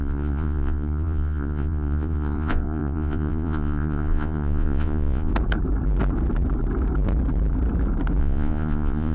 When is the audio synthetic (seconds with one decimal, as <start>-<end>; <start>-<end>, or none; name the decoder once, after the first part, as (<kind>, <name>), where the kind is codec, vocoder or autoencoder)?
0.0-5.3 (vocoder, Vocos); 8.2-9.1